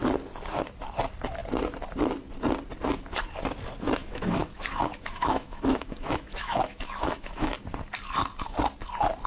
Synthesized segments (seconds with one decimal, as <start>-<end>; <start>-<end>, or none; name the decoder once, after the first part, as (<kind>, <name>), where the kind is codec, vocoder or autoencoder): 4.0-7.5 (autoencoder, DAC-VAE)